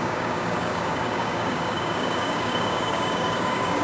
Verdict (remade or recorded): remade